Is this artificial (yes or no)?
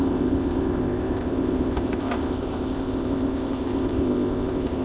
yes